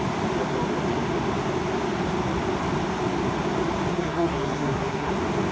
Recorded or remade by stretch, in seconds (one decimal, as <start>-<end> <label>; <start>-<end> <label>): 0.0-3.9 recorded; 3.9-5.1 remade; 5.1-5.5 recorded